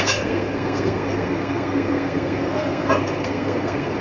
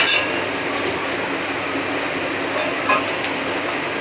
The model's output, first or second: first